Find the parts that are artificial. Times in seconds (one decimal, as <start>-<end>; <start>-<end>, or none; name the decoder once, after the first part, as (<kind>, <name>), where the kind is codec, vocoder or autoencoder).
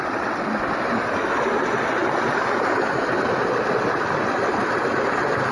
none